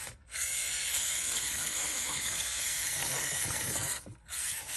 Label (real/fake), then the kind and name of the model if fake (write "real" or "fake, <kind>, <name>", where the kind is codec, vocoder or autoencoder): fake, codec, SNAC